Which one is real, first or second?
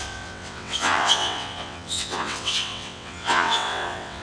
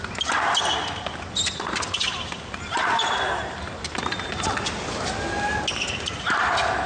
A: second